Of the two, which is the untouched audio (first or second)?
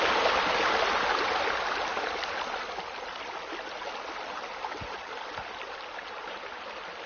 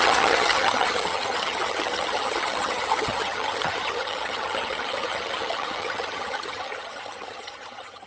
first